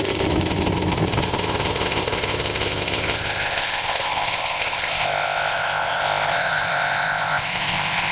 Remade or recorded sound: remade